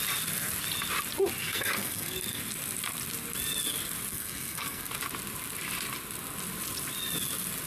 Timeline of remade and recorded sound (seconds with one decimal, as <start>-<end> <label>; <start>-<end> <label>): 0.0-1.4 recorded; 1.4-2.4 remade; 2.4-4.1 recorded; 4.1-4.9 remade; 4.9-7.7 recorded

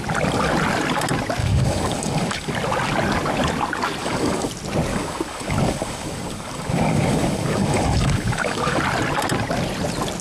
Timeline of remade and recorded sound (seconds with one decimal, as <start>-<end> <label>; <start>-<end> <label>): 0.0-1.4 recorded; 1.4-2.5 remade; 2.5-4.0 recorded; 4.0-4.5 remade; 4.5-4.9 recorded; 4.9-8.8 remade; 8.8-10.2 recorded